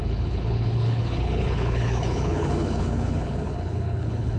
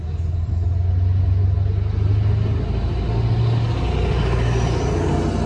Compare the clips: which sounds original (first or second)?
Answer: second